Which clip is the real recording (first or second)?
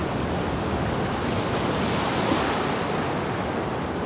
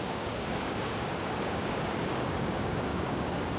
first